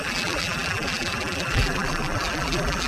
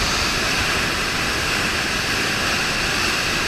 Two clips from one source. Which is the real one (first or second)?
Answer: second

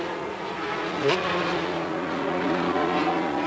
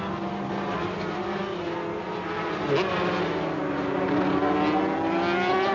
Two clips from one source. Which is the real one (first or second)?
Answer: second